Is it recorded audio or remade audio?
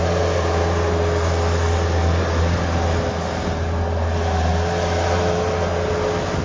recorded